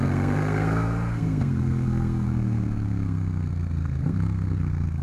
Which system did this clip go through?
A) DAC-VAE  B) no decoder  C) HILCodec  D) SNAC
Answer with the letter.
D